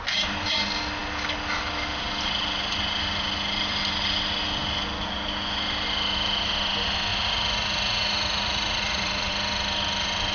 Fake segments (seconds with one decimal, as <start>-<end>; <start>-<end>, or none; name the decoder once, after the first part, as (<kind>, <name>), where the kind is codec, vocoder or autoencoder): 7.1-9.3 (vocoder, Vocos)